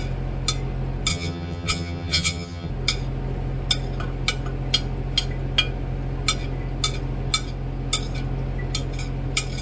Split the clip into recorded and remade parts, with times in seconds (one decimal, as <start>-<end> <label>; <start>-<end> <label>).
0.0-1.1 recorded; 1.1-2.7 remade; 2.7-9.6 recorded

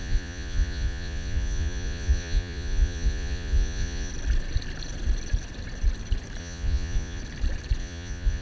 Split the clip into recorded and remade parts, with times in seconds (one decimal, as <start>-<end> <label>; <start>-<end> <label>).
0.0-4.1 remade; 4.1-6.4 recorded; 6.4-7.2 remade; 7.2-7.8 recorded; 7.8-8.4 remade